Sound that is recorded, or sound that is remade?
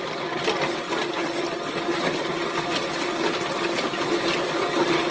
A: recorded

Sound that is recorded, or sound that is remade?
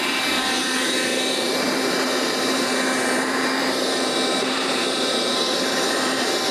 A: remade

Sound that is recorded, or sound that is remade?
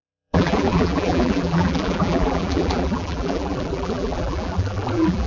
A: remade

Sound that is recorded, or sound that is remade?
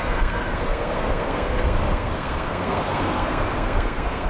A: remade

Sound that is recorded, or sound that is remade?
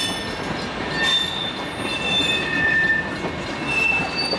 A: recorded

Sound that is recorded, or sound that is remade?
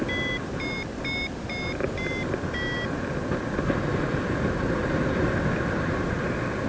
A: recorded